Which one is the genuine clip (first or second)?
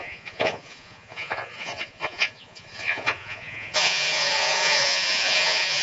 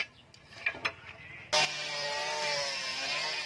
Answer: second